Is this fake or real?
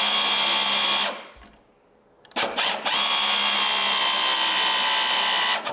real